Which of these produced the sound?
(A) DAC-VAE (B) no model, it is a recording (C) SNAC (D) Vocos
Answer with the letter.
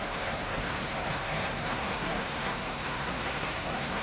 C